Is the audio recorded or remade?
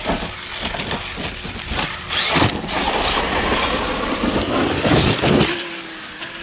recorded